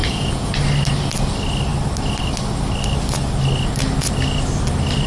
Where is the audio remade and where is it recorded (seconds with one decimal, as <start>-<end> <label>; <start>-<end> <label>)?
0.0-0.5 remade; 0.5-5.1 recorded